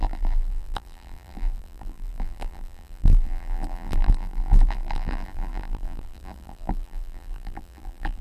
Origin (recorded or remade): remade